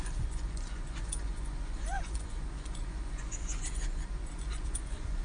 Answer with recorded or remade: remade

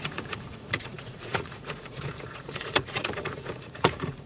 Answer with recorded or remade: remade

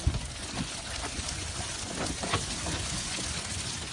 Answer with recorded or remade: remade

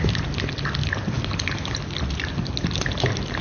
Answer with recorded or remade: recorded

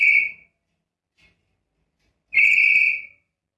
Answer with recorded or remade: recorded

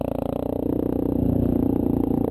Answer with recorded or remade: recorded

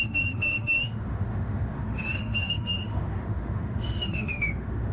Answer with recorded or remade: remade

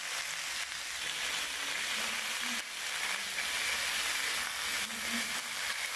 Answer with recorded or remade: recorded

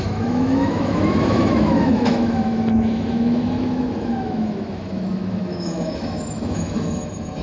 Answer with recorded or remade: remade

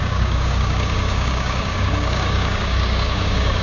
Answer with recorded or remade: remade